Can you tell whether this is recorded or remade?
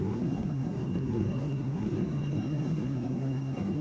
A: remade